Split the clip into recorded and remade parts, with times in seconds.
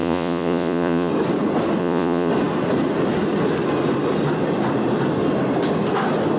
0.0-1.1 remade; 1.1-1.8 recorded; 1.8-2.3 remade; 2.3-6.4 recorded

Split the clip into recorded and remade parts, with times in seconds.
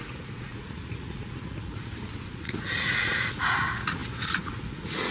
0.0-5.1 remade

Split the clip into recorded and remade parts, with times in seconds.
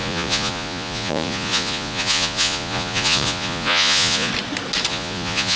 0.0-4.3 remade; 4.3-4.9 recorded; 4.9-5.6 remade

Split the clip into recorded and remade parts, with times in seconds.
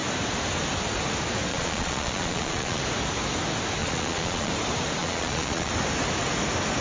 0.0-1.5 recorded; 1.5-2.8 remade; 2.8-3.8 recorded; 3.8-4.5 remade; 4.5-5.0 recorded; 5.0-5.7 remade; 5.7-6.8 recorded